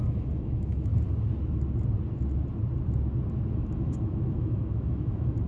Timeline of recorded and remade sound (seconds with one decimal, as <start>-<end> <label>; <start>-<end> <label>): 0.0-0.9 remade; 0.9-3.5 recorded; 3.5-5.5 remade